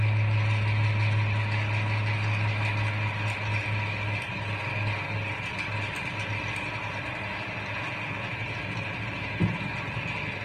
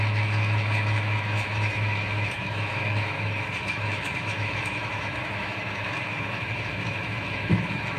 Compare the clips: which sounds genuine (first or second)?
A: first